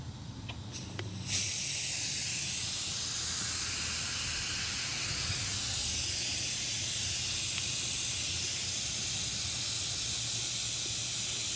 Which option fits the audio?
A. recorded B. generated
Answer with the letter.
A